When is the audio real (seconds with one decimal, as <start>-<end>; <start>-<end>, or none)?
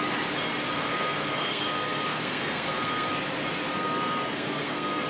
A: 0.0-0.9; 3.1-3.7